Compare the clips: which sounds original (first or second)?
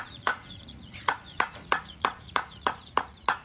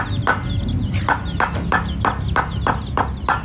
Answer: second